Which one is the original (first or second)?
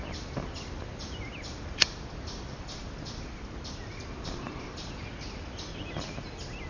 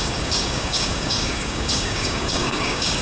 first